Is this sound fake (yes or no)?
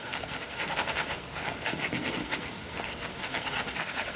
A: yes